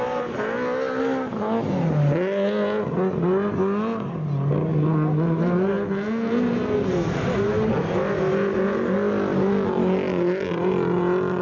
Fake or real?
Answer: real